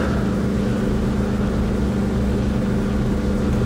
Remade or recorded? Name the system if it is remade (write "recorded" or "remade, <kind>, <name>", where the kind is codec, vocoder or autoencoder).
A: recorded